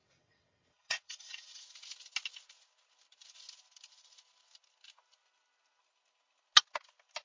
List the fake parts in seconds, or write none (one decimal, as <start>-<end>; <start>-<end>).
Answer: 0.0-1.6

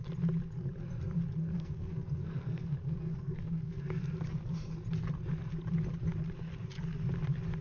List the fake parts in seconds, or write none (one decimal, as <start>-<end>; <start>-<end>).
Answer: 1.4-4.0

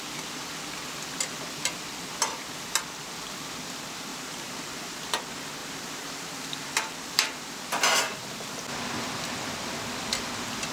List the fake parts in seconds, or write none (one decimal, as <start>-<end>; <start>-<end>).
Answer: 4.1-5.1; 5.6-7.5